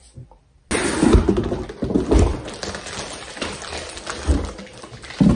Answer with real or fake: real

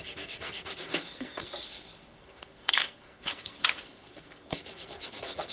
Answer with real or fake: fake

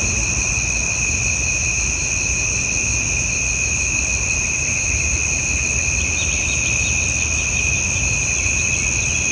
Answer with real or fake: real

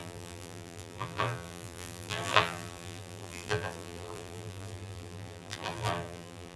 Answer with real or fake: fake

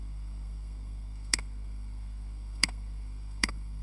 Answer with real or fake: fake